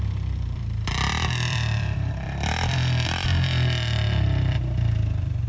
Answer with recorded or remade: remade